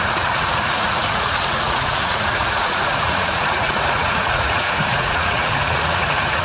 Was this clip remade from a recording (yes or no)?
yes